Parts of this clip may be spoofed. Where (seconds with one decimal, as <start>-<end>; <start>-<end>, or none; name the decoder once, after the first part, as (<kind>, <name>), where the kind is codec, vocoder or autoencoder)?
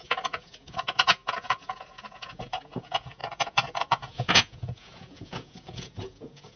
0.0-6.6 (vocoder, Vocos)